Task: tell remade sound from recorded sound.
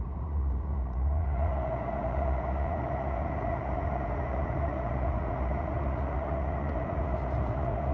remade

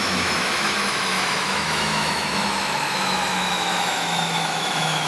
remade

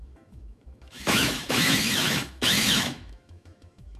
remade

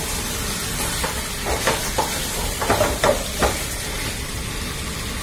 recorded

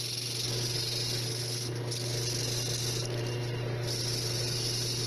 recorded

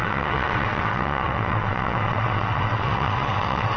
remade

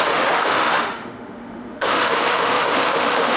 remade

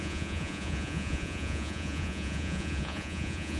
remade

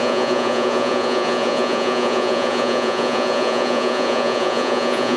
remade